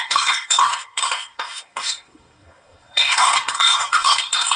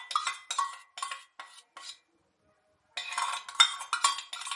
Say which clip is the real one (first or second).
second